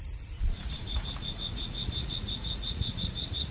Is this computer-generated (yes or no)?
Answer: yes